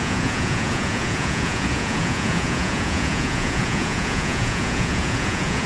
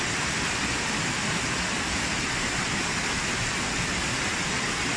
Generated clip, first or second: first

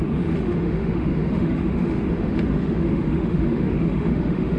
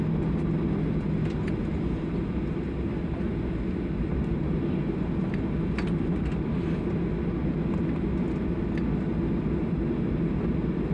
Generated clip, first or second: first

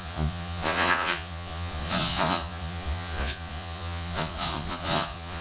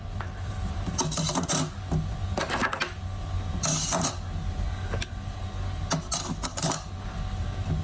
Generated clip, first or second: first